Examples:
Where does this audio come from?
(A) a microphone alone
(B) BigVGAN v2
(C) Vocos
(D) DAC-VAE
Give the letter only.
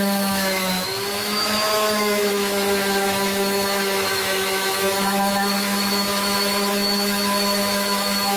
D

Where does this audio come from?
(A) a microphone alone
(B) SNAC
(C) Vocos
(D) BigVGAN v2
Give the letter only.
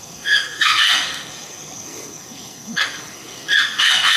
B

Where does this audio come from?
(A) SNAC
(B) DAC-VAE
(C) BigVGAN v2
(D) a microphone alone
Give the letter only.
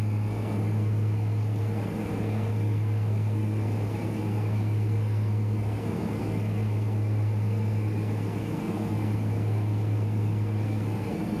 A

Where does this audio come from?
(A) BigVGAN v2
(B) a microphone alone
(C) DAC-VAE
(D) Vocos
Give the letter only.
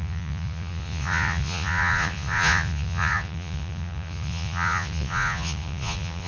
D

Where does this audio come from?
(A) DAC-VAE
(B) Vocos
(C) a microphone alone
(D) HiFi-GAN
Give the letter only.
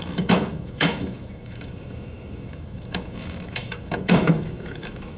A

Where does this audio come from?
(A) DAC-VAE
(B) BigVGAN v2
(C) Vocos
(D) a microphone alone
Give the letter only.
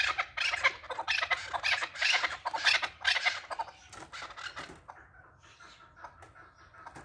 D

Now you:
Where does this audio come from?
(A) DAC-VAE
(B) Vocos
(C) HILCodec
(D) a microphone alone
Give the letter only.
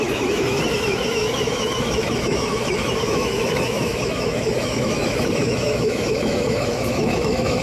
A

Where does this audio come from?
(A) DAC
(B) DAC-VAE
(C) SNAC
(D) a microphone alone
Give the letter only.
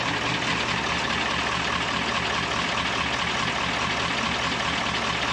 D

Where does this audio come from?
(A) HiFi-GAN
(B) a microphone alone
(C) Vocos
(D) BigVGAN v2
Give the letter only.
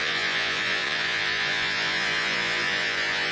C